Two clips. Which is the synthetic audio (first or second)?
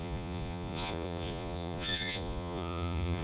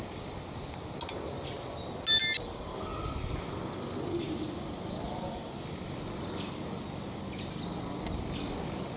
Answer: first